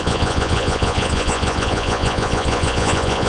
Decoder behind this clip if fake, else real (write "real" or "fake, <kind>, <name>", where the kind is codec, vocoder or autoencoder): fake, vocoder, Vocos